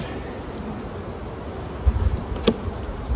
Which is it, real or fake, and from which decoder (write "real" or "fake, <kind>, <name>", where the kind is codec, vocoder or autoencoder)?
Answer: real